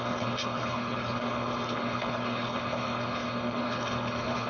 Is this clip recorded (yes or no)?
no